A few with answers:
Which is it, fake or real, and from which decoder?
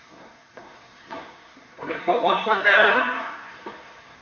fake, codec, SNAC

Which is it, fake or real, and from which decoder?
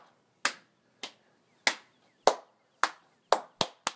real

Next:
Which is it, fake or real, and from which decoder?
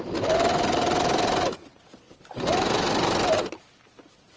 real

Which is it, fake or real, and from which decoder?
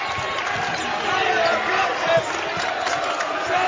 real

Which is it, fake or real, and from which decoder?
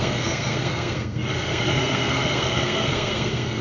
fake, codec, SNAC